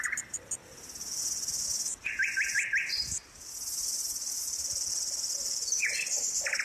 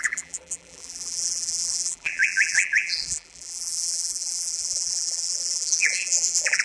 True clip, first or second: first